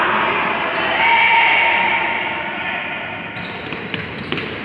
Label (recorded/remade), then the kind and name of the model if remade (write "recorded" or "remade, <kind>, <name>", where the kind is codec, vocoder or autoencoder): recorded